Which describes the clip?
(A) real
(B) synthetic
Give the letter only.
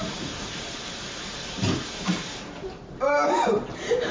B